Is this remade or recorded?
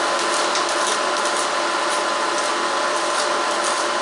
recorded